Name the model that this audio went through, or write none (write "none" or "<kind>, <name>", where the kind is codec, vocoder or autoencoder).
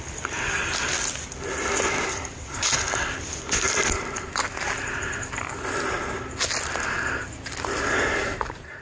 vocoder, BigVGAN v2